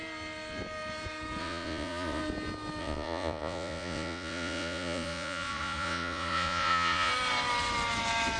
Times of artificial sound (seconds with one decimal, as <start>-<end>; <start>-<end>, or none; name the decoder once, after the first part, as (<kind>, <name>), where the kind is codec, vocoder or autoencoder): 1.4-2.2 (vocoder, Vocos); 2.8-7.1